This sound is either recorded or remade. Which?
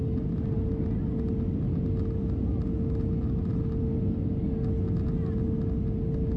recorded